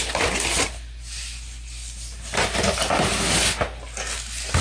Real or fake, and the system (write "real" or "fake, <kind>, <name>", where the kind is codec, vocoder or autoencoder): real